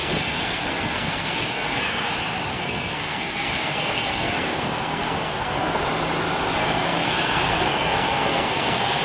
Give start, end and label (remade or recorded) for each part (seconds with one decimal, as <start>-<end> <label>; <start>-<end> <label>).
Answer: 0.0-2.1 remade; 2.1-2.5 recorded; 2.5-5.8 remade; 5.8-6.6 recorded; 6.6-9.0 remade